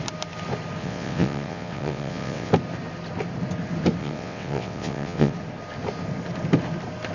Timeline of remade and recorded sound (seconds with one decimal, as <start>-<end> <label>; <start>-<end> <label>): 0.0-0.8 recorded; 0.8-2.5 remade; 2.5-4.0 recorded; 4.0-5.3 remade; 5.3-7.1 recorded